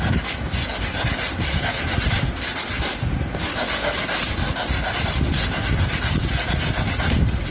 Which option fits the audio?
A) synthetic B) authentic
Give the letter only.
B